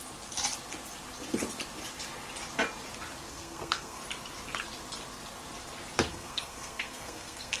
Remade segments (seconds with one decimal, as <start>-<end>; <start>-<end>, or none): 3.3-4.0; 6.1-7.6